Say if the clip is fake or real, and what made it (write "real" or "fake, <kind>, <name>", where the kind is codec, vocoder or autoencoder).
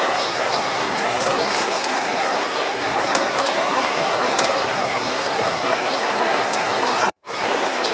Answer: fake, codec, SNAC